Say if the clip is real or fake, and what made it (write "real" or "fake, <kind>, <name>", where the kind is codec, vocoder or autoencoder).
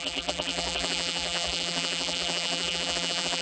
fake, vocoder, BigVGAN v2